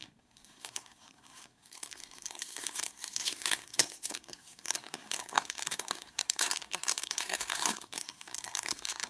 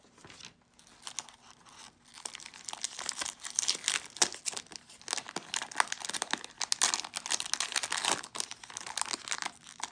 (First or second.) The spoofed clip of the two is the first